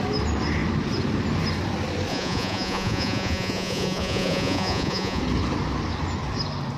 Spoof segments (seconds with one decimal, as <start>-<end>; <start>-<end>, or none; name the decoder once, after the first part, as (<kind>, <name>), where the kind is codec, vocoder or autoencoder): 2.1-5.2 (vocoder, Vocos)